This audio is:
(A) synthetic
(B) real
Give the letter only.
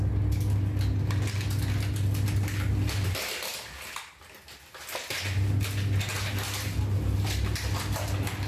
B